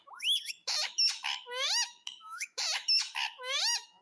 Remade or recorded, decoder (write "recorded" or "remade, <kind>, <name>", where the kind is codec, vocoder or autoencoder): remade, autoencoder, DAC-VAE